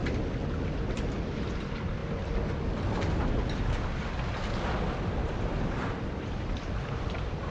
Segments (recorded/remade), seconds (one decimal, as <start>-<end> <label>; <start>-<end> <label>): 0.0-1.2 recorded; 1.2-2.0 remade; 2.0-4.5 recorded; 4.5-7.5 remade